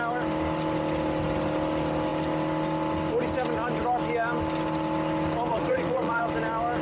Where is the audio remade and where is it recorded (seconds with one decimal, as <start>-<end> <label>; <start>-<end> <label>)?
0.0-5.5 recorded; 5.5-6.2 remade; 6.2-6.8 recorded